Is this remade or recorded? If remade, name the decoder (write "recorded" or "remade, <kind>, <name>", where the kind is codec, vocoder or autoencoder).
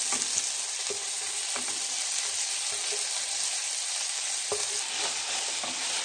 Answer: recorded